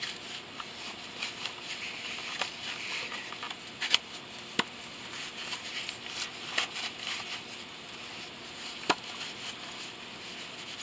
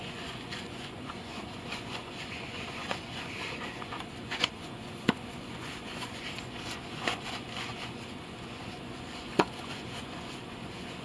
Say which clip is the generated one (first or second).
second